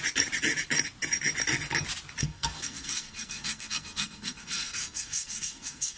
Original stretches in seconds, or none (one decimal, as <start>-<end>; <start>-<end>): 0.0-2.2